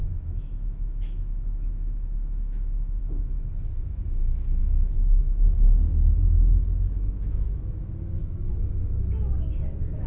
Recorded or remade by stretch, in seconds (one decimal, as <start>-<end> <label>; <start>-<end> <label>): 0.0-3.0 remade; 3.0-4.6 recorded; 4.6-5.2 remade; 5.2-5.9 recorded; 5.9-8.4 remade; 8.4-10.1 recorded